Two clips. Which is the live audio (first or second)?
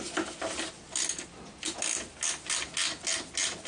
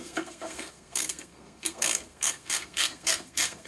first